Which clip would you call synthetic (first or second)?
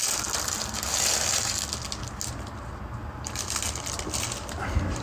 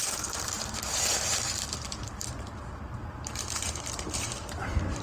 second